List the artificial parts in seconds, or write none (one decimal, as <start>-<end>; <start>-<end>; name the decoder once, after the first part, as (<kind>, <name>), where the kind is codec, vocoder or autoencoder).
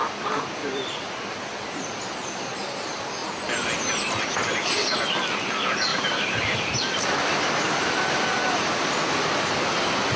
0.6-2.4 (vocoder, BigVGAN v2); 5.9-6.8